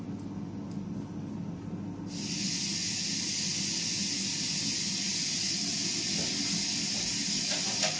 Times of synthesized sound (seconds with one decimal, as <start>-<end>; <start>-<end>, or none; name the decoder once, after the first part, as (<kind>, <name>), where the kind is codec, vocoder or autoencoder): none